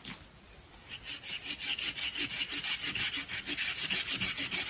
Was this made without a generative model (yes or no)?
yes